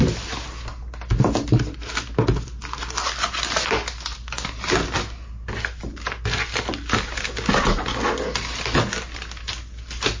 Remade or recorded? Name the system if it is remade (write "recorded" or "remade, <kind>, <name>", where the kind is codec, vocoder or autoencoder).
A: recorded